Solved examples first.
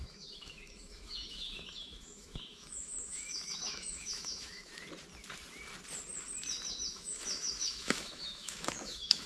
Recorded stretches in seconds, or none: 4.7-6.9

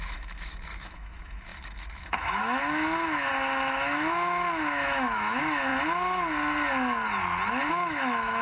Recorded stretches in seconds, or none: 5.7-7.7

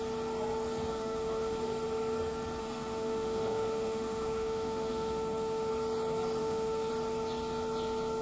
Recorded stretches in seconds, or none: 0.0-0.9; 1.6-2.6; 5.7-6.4; 6.9-8.2

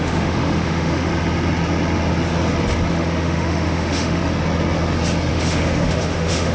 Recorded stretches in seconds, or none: 1.1-2.9; 4.2-5.3

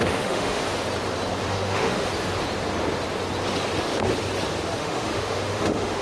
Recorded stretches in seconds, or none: 0.6-1.5; 2.1-4.8

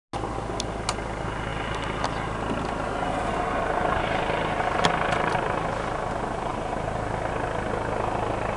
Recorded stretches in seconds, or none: 0.0-8.6

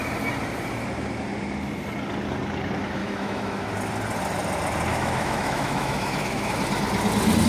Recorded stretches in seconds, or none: 0.0-3.0; 3.7-4.9; 6.6-7.5

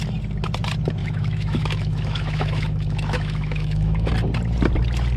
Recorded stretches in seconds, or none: 0.0-1.0; 4.1-5.2